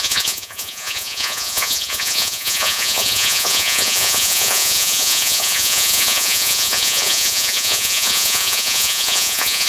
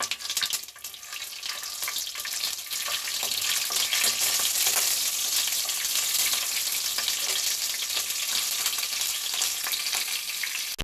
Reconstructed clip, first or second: first